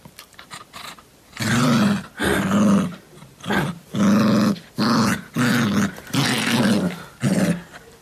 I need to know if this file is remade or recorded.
remade